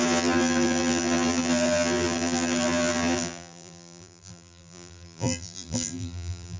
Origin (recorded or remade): remade